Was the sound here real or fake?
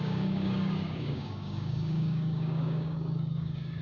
fake